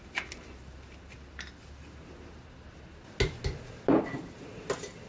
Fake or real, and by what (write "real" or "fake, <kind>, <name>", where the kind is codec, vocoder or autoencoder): real